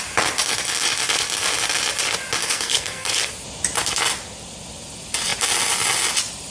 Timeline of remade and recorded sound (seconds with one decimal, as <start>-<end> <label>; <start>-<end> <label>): 0.0-2.4 recorded; 2.4-3.3 remade; 3.3-6.5 recorded